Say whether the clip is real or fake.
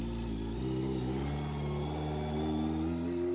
real